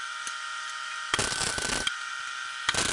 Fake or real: real